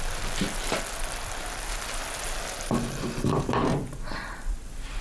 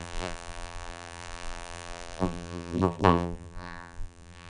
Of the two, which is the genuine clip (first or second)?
first